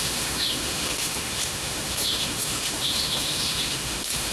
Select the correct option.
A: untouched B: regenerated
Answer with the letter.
B